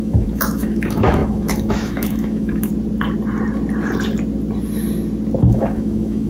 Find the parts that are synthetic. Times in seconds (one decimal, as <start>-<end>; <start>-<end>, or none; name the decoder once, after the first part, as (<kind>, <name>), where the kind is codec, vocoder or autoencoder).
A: 0.0-2.7 (autoencoder, DAC-VAE); 5.4-6.3